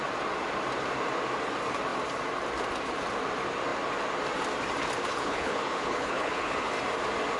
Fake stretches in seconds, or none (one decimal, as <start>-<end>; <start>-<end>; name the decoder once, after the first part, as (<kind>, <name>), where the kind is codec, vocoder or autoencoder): 5.1-6.7 (codec, HILCodec)